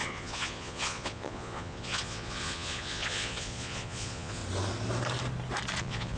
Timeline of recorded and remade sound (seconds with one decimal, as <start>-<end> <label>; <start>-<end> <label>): 0.0-4.4 remade; 4.4-5.8 recorded; 5.8-6.2 remade